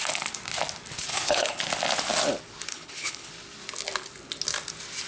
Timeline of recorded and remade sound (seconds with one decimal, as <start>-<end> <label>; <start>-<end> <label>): 0.0-1.1 recorded; 1.1-1.6 remade; 1.6-2.7 recorded; 2.7-3.3 remade; 3.3-5.1 recorded